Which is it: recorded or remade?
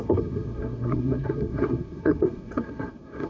remade